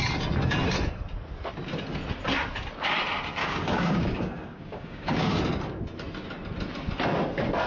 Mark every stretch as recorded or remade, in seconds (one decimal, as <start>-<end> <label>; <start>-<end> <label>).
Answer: 0.0-3.4 recorded; 3.4-5.4 remade; 5.4-7.7 recorded